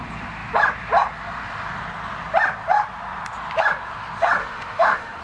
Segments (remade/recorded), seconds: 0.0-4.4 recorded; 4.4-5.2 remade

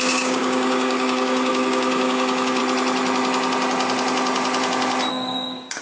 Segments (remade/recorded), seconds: 0.0-2.6 remade; 2.6-5.1 recorded; 5.1-5.8 remade

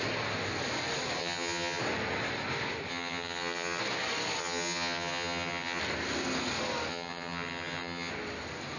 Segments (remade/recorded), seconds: 0.0-1.2 recorded; 1.2-1.8 remade; 1.8-2.9 recorded; 2.9-3.8 remade; 3.8-4.4 recorded; 4.4-5.8 remade; 5.8-6.9 recorded; 6.9-8.1 remade; 8.1-8.8 recorded

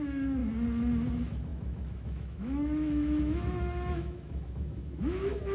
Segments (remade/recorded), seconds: 0.0-0.4 remade; 0.4-1.1 recorded; 1.1-5.5 remade

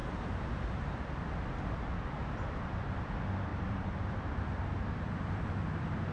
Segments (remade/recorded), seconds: 0.0-1.0 remade; 1.0-3.5 recorded; 3.5-4.1 remade; 4.1-6.1 recorded